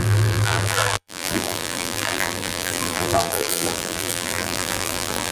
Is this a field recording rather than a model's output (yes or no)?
no